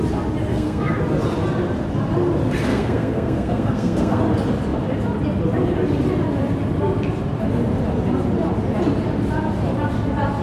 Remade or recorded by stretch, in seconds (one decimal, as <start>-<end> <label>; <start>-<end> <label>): 0.0-0.5 recorded; 0.5-1.0 remade; 1.0-2.7 recorded; 2.7-4.2 remade; 4.2-10.4 recorded